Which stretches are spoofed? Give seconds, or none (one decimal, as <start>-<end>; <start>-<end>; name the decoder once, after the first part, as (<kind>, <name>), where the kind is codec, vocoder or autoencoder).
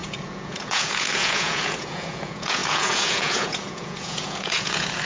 0.0-5.0 (vocoder, Vocos)